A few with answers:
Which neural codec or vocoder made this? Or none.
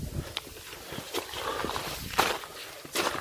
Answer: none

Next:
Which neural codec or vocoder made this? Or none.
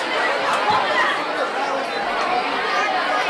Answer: none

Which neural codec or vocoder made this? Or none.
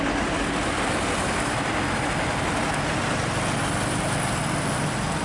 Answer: none